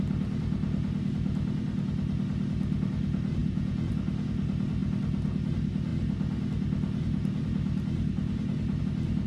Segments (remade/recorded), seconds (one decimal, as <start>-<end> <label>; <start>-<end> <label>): 0.0-3.4 recorded; 3.4-3.9 remade; 3.9-9.3 recorded